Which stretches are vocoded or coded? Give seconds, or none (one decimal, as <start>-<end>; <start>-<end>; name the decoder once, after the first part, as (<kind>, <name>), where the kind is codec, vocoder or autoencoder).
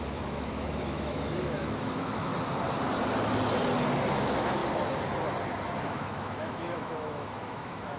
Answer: 0.0-2.3 (autoencoder, DAC-VAE); 4.1-4.6; 5.8-8.0